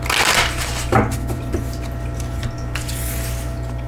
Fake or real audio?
real